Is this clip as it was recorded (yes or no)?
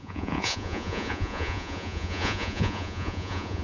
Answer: no